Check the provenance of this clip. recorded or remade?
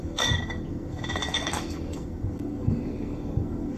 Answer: remade